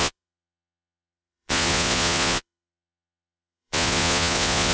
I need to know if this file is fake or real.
fake